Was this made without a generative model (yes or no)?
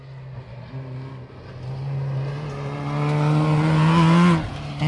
yes